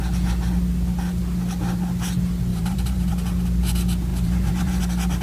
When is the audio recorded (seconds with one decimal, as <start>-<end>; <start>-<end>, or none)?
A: 0.0-2.5; 3.1-4.1; 4.8-5.2